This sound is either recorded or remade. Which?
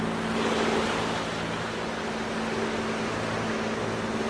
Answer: recorded